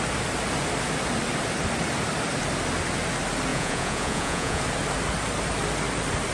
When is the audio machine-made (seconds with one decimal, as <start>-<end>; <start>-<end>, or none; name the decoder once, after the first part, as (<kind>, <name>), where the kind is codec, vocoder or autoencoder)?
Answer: 3.5-4.6 (vocoder, Vocos)